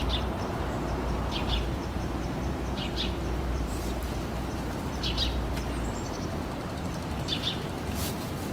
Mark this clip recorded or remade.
remade